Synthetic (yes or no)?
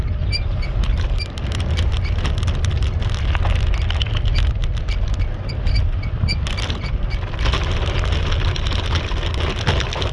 no